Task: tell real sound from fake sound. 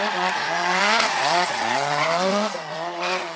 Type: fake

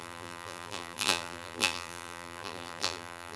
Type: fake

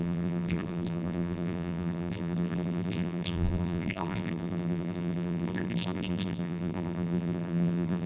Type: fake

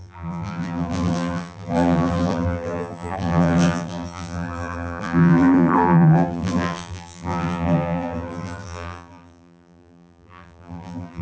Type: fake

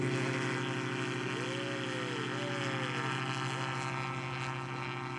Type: real